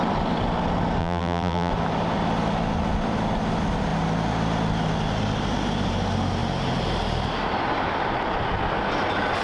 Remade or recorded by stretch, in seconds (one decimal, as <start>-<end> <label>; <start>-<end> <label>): 0.0-1.0 recorded; 1.0-1.7 remade; 1.7-9.4 recorded